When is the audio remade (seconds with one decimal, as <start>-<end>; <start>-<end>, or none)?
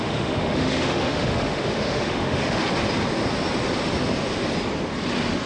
0.0-2.6